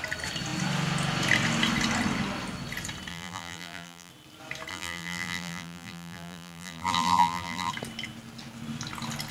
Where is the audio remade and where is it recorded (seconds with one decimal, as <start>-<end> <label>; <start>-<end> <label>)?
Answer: 0.0-3.1 recorded; 3.1-4.1 remade; 4.1-4.7 recorded; 4.7-7.7 remade; 7.7-9.3 recorded